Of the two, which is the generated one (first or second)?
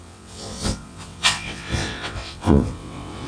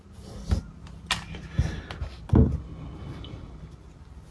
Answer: first